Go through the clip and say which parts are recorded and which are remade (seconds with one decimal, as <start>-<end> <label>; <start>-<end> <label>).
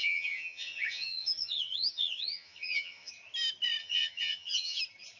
0.0-3.1 remade; 3.1-3.8 recorded; 3.8-4.8 remade; 4.8-5.2 recorded